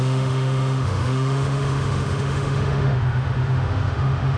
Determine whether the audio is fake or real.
fake